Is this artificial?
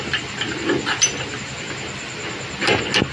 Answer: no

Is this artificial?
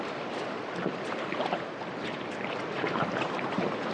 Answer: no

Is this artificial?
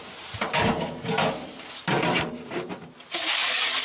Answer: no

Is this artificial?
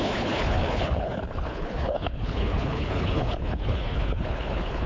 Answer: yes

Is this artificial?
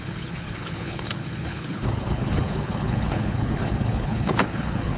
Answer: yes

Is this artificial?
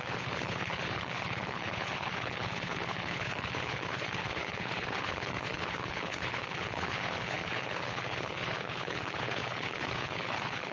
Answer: yes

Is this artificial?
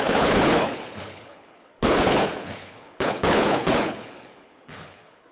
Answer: yes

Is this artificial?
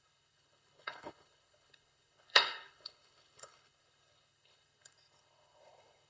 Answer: yes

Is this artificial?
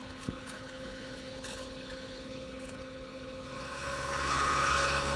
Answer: yes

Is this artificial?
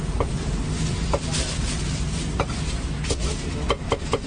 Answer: no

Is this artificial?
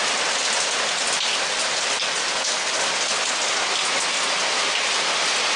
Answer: no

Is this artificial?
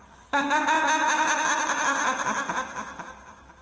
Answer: no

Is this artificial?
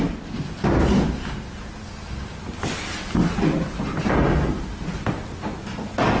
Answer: no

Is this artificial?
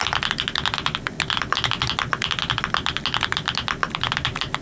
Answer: no